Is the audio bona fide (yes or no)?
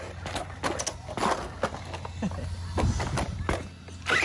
yes